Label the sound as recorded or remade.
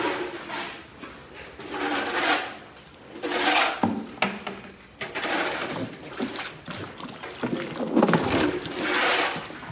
recorded